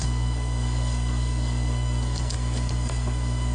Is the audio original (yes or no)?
no